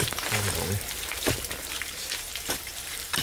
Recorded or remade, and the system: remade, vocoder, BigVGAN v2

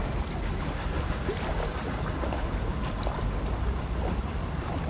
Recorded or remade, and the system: recorded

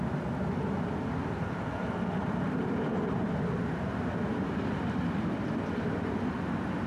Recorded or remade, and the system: recorded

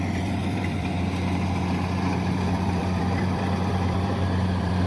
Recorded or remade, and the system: remade, vocoder, BigVGAN v2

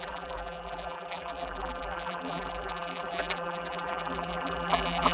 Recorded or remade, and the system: remade, vocoder, BigVGAN v2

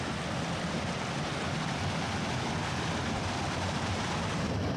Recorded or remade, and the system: recorded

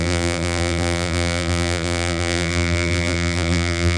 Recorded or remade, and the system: remade, vocoder, BigVGAN v2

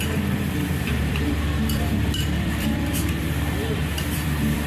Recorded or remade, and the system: remade, vocoder, BigVGAN v2